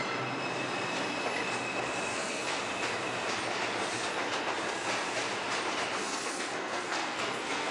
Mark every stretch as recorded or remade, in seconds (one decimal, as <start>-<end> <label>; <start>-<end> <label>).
0.0-2.1 recorded; 2.1-2.6 remade; 2.6-6.0 recorded; 6.0-7.7 remade